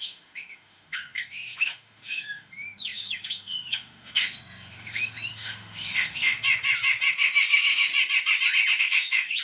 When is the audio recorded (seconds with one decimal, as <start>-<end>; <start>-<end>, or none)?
6.4-7.1; 7.9-8.8